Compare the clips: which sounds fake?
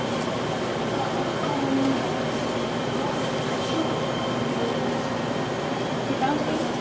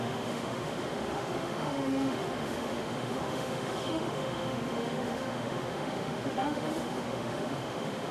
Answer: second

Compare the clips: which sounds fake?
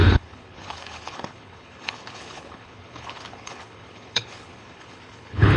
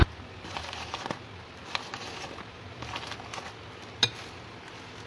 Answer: first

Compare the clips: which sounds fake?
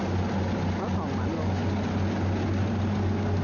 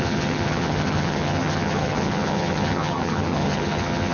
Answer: second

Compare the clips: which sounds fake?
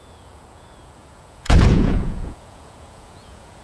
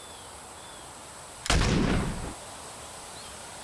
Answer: first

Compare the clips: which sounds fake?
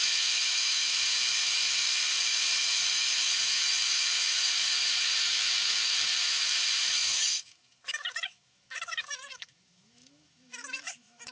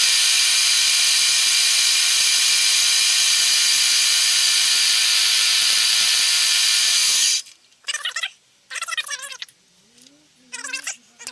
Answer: first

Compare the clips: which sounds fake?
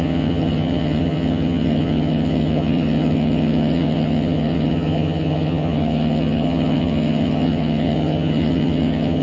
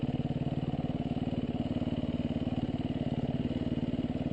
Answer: first